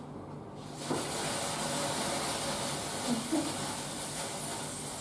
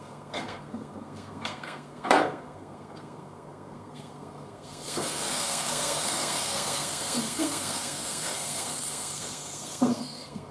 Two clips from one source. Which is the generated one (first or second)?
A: second